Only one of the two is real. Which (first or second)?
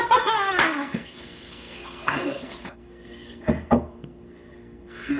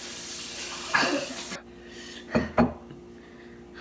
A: second